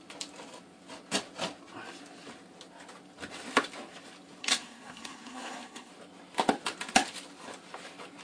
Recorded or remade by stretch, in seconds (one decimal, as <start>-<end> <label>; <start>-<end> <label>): 0.0-4.4 recorded; 4.4-5.9 remade; 5.9-8.2 recorded